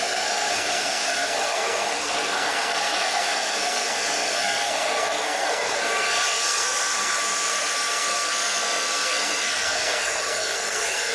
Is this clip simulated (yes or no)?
yes